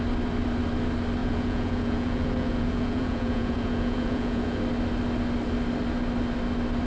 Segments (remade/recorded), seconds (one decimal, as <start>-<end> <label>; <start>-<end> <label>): 0.0-1.2 recorded; 1.2-4.6 remade; 4.6-6.9 recorded